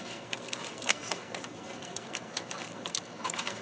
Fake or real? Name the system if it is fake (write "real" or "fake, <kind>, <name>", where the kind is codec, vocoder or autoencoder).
fake, codec, SNAC